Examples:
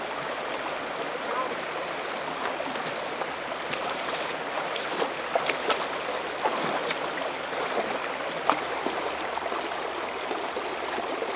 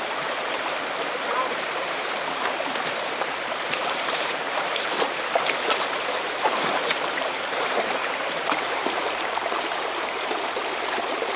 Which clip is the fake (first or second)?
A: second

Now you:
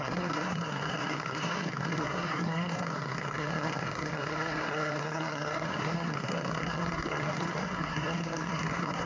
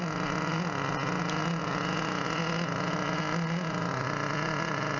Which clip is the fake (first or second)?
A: first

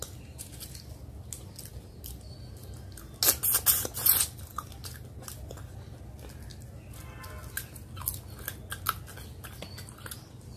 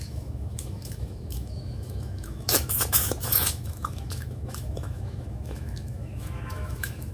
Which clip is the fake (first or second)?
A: second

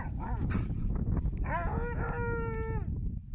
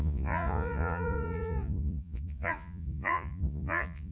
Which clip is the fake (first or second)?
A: second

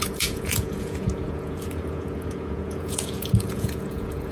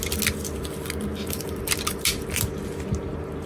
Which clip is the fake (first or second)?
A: first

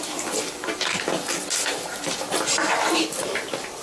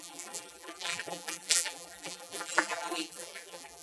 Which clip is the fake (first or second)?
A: second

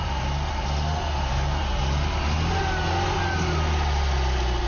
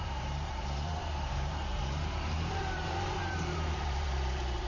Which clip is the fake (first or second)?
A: second